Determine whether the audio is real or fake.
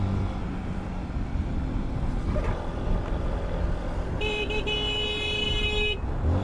real